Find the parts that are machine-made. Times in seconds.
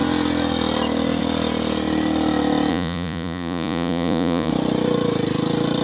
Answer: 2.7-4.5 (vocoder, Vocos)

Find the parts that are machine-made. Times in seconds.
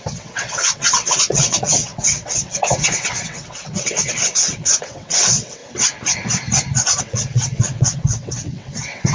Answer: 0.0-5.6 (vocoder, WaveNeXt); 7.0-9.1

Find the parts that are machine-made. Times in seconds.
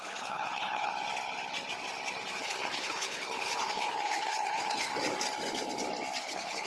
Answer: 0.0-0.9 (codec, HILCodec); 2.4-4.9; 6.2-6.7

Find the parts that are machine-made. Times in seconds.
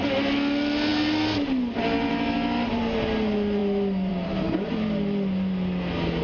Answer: none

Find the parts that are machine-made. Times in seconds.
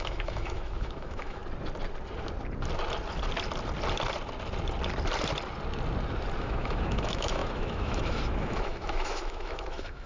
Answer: 0.0-1.4 (autoencoder, DAC-VAE); 6.4-10.1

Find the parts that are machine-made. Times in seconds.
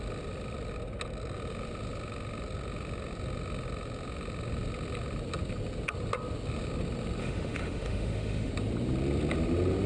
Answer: 7.2-8.5 (autoencoder, DAC-VAE)